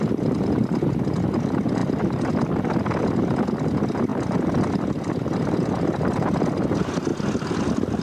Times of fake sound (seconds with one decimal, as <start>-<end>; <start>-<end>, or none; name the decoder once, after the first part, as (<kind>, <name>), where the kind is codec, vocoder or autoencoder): 1.8-3.0 (vocoder, BigVGAN v2); 4.1-5.7